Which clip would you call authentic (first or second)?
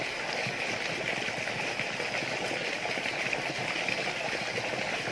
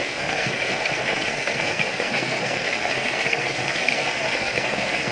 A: first